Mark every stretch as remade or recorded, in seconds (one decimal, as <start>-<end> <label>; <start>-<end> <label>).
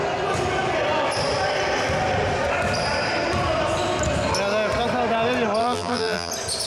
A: 0.0-5.6 recorded; 5.6-6.3 remade; 6.3-6.7 recorded